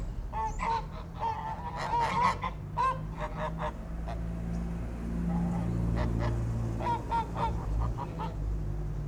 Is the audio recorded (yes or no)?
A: yes